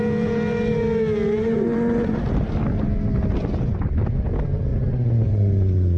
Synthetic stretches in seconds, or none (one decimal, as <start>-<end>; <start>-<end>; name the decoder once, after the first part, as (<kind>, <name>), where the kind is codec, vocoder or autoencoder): 1.4-2.2 (vocoder, Vocos)